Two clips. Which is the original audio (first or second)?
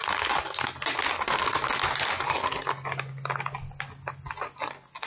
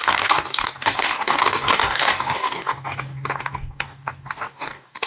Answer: first